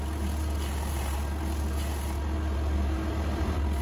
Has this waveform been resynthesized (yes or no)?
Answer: no